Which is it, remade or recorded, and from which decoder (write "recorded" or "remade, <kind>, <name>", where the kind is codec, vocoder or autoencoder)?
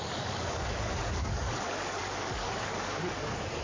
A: remade, codec, DAC